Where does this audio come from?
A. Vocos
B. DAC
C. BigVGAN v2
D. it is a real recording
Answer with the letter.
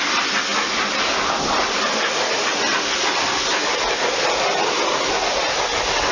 D